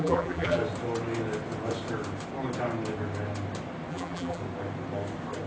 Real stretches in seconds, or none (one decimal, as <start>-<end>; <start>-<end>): 0.6-3.9; 4.4-5.5